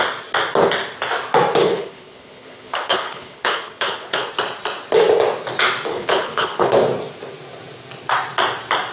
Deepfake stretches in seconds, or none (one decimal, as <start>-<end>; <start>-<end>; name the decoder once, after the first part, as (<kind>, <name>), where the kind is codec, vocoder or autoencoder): 1.6-4.3 (codec, HILCodec); 5.9-6.8